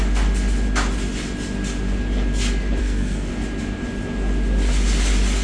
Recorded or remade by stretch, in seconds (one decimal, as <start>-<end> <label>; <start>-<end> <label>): 0.0-2.8 recorded; 2.8-3.3 remade; 3.3-5.4 recorded